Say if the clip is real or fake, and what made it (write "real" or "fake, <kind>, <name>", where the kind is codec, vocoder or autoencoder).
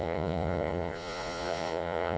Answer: fake, vocoder, Vocos